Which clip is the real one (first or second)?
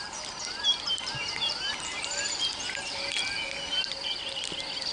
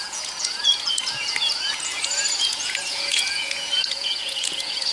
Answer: first